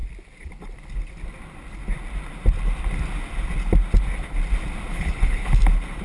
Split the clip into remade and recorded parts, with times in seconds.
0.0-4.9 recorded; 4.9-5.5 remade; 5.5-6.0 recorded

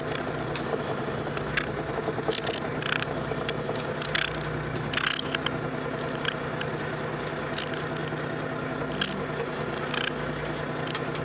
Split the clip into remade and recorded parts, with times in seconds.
0.0-11.2 recorded